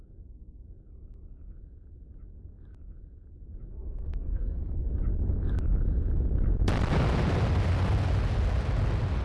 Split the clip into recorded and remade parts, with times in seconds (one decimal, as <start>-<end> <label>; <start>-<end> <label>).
0.0-3.7 recorded; 3.7-4.9 remade; 4.9-9.2 recorded